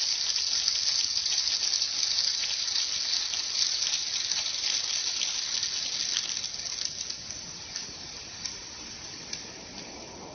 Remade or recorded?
recorded